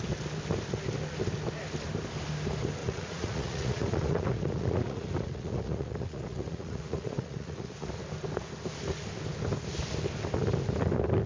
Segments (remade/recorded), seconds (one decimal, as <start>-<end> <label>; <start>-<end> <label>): 0.0-2.8 recorded; 2.8-7.9 remade; 7.9-11.3 recorded